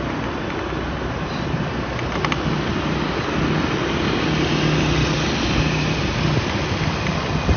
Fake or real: real